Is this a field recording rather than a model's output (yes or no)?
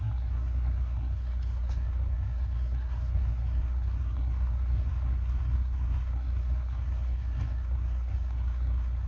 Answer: no